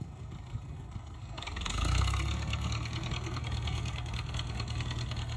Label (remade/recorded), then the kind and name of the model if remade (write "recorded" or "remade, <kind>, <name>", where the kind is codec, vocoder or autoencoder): remade, codec, SNAC